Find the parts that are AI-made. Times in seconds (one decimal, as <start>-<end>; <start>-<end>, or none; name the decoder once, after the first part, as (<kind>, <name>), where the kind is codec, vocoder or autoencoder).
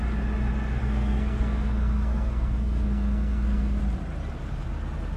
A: 0.8-3.8 (codec, SNAC)